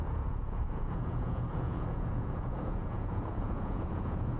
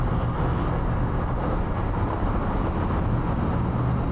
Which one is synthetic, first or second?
first